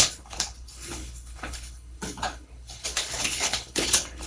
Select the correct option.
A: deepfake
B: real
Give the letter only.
A